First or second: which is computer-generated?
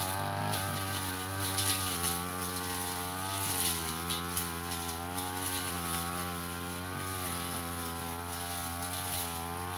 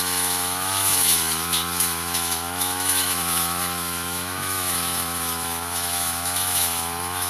second